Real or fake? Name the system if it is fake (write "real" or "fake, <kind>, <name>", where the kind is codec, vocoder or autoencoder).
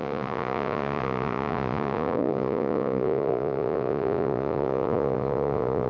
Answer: fake, vocoder, Vocos